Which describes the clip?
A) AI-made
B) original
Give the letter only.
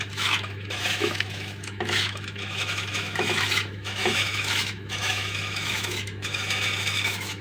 A